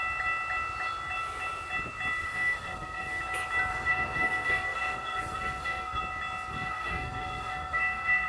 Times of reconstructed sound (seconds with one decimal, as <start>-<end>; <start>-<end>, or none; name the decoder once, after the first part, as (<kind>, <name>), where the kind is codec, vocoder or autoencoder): 2.2-3.2 (codec, SNAC); 3.7-6.0; 6.5-8.3